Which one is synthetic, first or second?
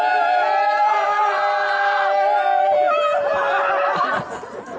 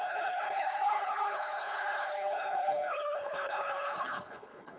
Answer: second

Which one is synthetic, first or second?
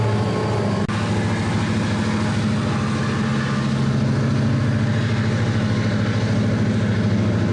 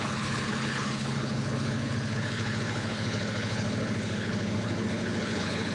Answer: second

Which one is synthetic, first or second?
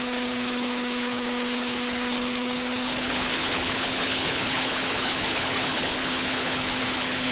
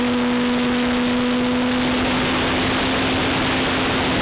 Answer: first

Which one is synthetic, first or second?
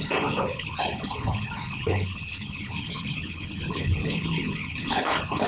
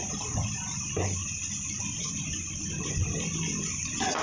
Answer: first